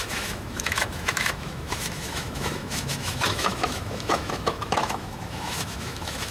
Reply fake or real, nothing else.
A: fake